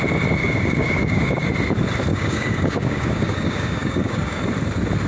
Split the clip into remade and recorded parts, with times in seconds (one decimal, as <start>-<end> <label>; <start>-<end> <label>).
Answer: 0.0-0.4 recorded; 0.4-1.5 remade; 1.5-2.1 recorded; 2.1-4.4 remade; 4.4-5.1 recorded